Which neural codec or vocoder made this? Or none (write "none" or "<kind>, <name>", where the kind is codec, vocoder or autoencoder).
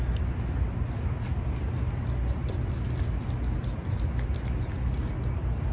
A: none